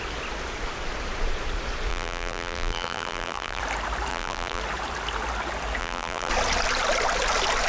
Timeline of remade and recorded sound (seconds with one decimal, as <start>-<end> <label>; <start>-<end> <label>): 0.0-1.9 recorded; 1.9-3.6 remade; 3.6-4.1 recorded; 4.1-4.6 remade; 4.6-5.8 recorded; 5.8-6.3 remade; 6.3-7.7 recorded